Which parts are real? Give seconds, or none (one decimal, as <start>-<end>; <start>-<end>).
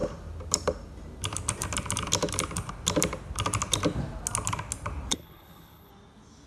0.0-5.1; 5.9-6.5